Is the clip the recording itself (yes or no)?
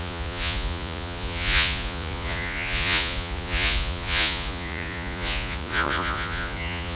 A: no